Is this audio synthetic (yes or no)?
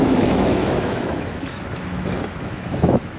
yes